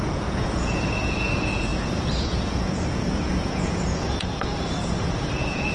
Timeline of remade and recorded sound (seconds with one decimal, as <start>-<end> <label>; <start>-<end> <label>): 0.0-5.7 remade

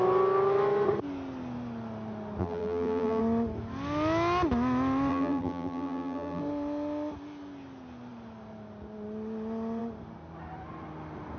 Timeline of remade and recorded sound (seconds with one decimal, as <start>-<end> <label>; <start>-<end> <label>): 0.0-2.4 recorded; 2.4-3.2 remade; 3.2-5.1 recorded; 5.1-6.4 remade; 6.4-11.4 recorded

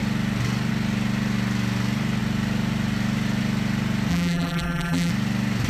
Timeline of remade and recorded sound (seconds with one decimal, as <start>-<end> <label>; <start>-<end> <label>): 0.0-4.1 recorded; 4.1-5.1 remade; 5.1-5.7 recorded

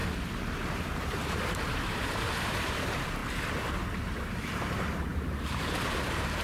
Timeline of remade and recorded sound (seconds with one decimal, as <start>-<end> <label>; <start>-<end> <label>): 0.0-0.7 recorded; 0.7-3.2 remade; 3.2-3.9 recorded; 3.9-6.4 remade